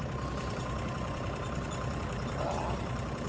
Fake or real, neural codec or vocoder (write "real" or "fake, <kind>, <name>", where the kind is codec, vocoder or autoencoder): fake, vocoder, BigVGAN v2